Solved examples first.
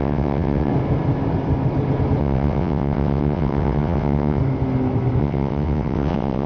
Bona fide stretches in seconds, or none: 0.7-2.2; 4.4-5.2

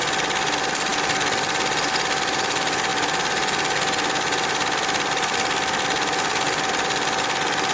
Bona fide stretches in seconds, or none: 0.0-7.7

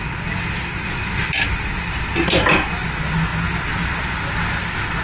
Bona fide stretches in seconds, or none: 0.0-5.0